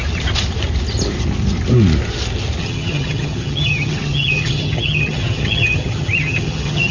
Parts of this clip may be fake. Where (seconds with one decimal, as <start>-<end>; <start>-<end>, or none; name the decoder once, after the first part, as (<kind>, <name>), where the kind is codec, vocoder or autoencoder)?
2.6-6.9 (vocoder, HiFi-GAN)